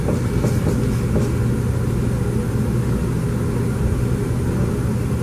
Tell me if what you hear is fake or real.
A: real